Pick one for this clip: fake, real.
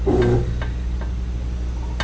real